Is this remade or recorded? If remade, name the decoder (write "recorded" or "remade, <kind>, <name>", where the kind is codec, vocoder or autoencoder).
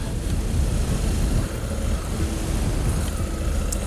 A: recorded